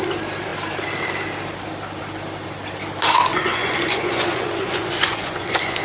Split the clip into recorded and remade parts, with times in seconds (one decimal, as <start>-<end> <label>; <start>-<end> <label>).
0.0-3.3 recorded; 3.3-5.8 remade